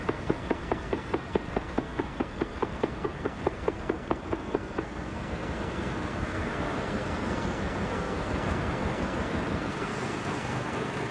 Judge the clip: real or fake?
fake